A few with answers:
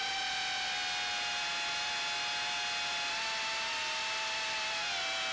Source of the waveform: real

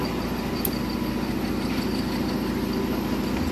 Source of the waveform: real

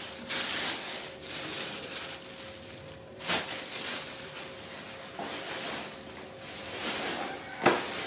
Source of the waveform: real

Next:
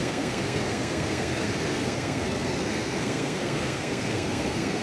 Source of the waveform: fake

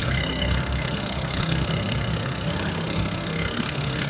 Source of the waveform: fake